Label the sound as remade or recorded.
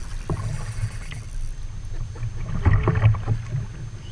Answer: recorded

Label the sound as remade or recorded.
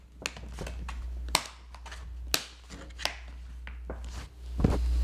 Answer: recorded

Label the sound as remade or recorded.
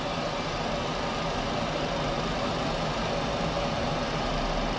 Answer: recorded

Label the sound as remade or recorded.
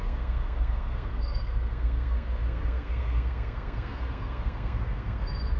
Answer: remade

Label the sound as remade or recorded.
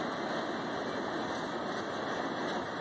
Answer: recorded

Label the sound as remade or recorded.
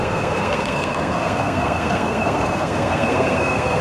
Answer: remade